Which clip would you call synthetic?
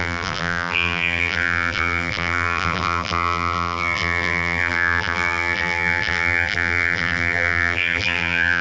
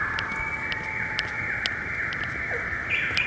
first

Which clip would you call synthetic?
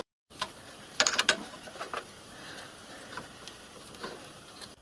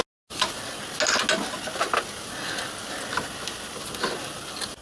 first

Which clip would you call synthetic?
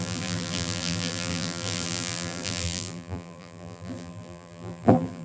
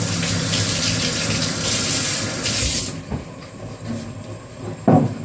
first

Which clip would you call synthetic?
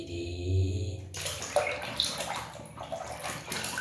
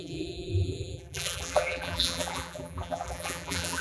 second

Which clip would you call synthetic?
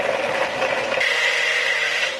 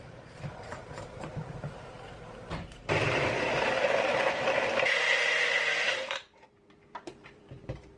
second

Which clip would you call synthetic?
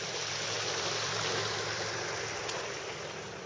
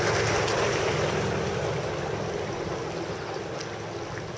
first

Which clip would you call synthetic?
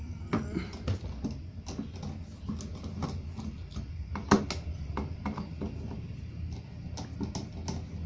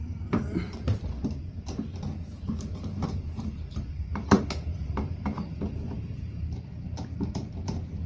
second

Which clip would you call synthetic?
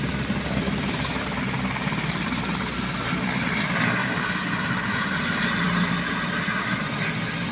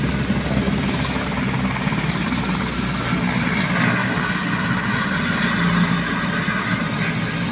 first